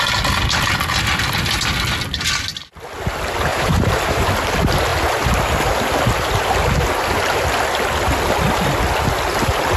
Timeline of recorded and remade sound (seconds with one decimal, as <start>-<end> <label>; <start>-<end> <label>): 0.0-3.5 recorded; 3.5-4.3 remade; 4.3-9.8 recorded

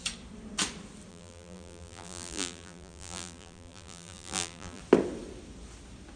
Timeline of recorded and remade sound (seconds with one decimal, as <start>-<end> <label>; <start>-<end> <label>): 0.0-1.1 recorded; 1.1-4.8 remade; 4.8-6.2 recorded

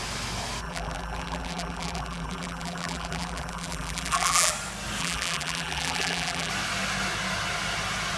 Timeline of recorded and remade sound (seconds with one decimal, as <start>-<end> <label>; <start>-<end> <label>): 0.0-0.6 recorded; 0.6-4.5 remade; 4.5-5.0 recorded; 5.0-6.5 remade; 6.5-8.2 recorded

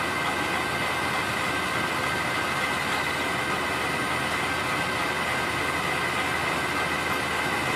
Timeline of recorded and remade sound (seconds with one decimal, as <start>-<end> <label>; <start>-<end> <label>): 0.0-0.8 recorded; 0.8-2.7 remade; 2.7-7.8 recorded